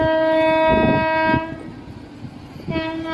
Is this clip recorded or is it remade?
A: recorded